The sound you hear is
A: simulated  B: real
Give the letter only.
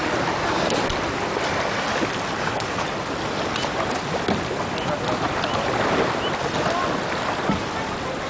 B